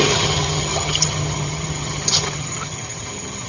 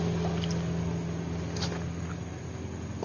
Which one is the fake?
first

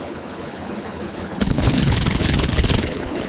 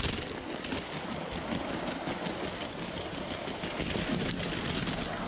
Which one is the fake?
first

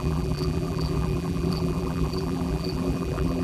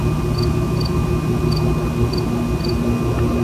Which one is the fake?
first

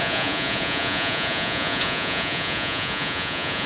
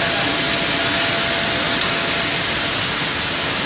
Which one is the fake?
first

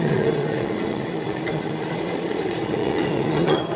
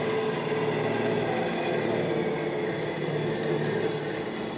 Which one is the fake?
first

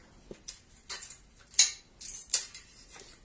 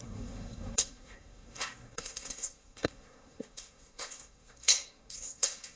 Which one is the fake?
second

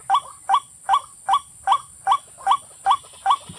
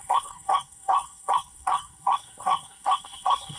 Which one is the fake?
second